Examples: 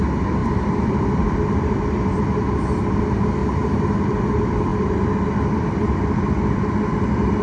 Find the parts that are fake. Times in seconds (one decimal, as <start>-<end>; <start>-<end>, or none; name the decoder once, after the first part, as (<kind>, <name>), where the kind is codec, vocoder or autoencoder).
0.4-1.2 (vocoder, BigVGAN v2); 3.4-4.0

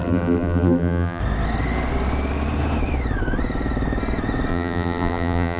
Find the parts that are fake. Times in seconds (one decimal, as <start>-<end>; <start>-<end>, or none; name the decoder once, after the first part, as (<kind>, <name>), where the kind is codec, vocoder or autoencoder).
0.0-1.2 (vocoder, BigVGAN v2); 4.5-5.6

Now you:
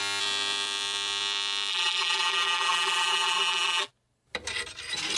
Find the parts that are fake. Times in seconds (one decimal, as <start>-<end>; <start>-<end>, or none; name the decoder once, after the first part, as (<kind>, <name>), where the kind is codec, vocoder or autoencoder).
1.7-3.9 (vocoder, BigVGAN v2)

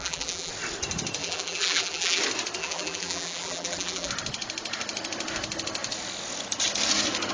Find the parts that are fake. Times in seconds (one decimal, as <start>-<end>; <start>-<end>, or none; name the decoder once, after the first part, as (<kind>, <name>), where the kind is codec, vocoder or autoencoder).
0.0-0.5 (vocoder, BigVGAN v2); 1.2-2.2; 2.6-4.1

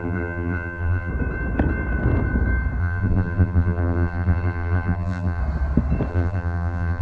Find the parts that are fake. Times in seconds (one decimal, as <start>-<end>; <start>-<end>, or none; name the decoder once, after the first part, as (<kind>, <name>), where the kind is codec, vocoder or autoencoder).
0.0-1.1 (vocoder, BigVGAN v2); 2.8-5.4; 6.1-7.0

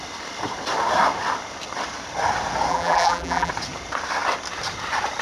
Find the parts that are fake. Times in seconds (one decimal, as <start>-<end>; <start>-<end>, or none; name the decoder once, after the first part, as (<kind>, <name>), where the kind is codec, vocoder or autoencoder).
2.7-3.5 (vocoder, BigVGAN v2)